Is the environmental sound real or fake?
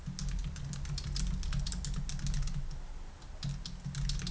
real